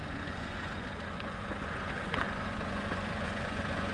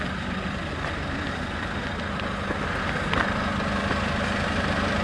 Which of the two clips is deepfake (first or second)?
first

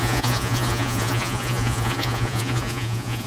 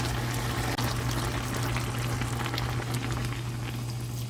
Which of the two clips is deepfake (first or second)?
first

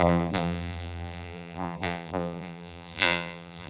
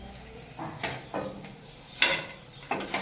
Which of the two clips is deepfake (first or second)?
first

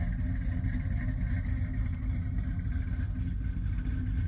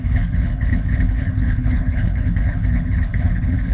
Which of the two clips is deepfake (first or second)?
second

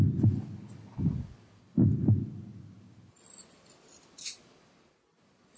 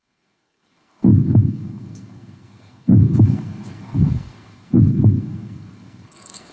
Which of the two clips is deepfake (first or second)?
second